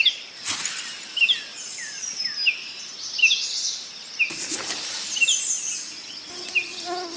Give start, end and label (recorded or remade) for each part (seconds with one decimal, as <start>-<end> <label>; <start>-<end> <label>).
0.0-7.2 recorded